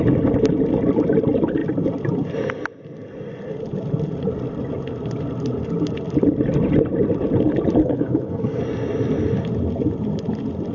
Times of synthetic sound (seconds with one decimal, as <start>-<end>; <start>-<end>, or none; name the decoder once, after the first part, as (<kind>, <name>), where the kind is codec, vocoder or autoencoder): 7.8-8.6 (codec, SNAC)